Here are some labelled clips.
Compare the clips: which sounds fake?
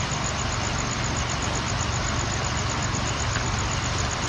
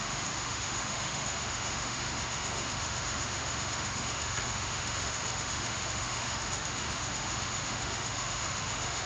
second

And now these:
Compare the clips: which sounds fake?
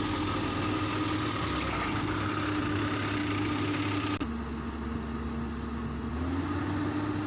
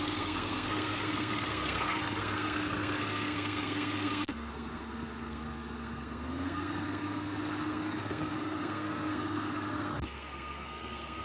second